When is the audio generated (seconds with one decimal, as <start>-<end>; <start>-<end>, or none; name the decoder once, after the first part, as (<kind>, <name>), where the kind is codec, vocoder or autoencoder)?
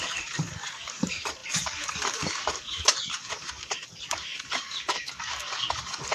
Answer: 0.0-6.1 (codec, DAC)